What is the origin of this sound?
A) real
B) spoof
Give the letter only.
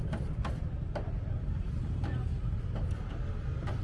A